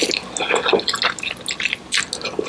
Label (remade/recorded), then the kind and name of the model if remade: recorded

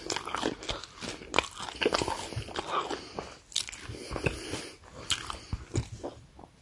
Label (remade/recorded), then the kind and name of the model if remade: recorded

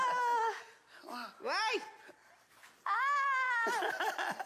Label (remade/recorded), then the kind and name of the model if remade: recorded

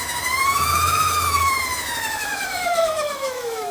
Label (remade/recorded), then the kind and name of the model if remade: remade, autoencoder, DAC-VAE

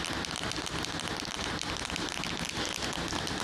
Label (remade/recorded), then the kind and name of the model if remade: recorded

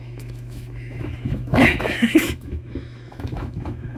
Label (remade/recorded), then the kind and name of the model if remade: remade, autoencoder, DAC-VAE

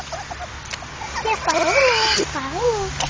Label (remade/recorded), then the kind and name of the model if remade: recorded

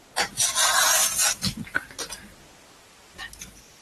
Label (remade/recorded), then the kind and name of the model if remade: recorded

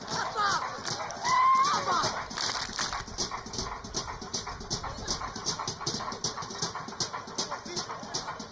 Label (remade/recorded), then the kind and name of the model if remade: recorded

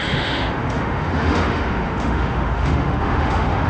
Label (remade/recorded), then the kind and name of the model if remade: remade, autoencoder, DAC-VAE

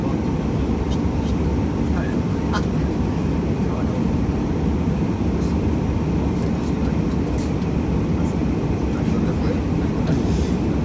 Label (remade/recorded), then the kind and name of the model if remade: recorded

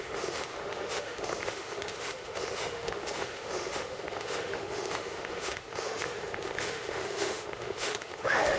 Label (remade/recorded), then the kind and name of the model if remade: remade, autoencoder, DAC-VAE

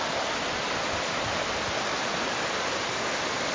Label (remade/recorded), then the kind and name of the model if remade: recorded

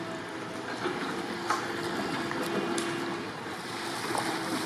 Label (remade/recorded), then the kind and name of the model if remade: recorded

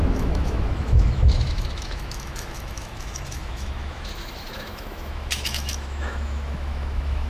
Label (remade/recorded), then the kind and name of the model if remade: remade, autoencoder, DAC-VAE